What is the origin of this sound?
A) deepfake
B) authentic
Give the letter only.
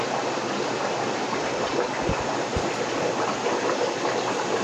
B